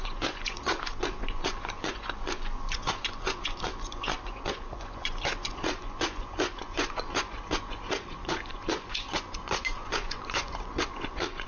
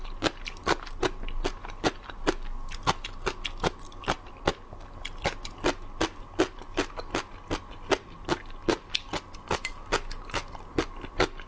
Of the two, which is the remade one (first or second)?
first